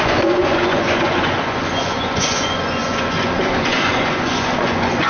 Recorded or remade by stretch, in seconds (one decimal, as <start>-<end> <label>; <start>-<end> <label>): 0.0-5.1 remade